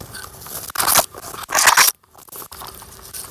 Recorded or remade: recorded